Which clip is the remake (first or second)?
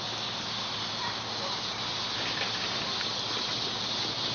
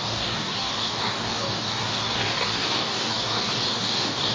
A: second